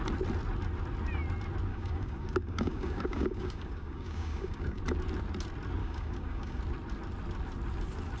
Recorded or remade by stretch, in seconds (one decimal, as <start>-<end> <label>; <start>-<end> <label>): 0.0-1.7 recorded; 1.7-4.8 remade; 4.8-5.8 recorded; 5.8-6.6 remade; 6.6-8.2 recorded